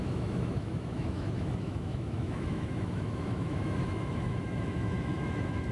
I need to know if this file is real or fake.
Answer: fake